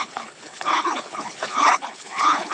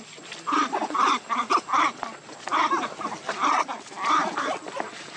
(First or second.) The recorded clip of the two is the second